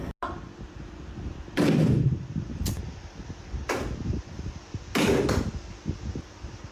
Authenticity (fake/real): real